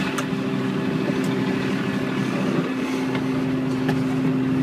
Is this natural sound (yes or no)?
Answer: yes